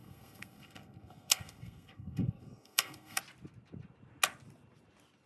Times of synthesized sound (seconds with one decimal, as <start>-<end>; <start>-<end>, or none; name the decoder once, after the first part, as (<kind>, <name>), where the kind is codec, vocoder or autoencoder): 0.0-3.2 (codec, SNAC)